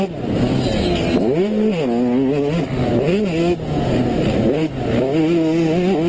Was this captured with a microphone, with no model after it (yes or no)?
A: yes